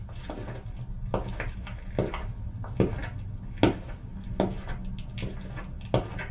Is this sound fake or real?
real